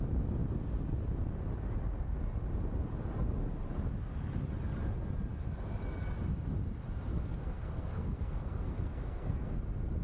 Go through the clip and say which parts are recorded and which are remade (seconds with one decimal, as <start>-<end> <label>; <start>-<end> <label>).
0.0-7.1 recorded; 7.1-9.6 remade; 9.6-10.0 recorded